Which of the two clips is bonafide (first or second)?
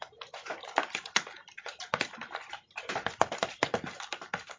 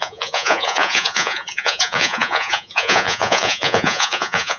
first